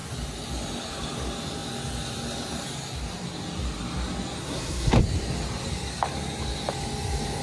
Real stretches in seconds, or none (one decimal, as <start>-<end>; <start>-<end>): 0.0-4.4; 5.0-7.4